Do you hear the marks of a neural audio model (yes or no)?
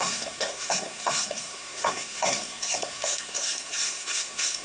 yes